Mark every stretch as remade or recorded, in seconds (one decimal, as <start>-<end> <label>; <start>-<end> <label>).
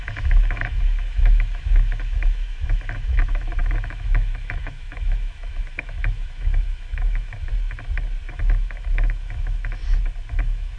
0.0-7.5 remade; 7.5-8.3 recorded; 8.3-9.8 remade; 9.8-10.3 recorded; 10.3-10.8 remade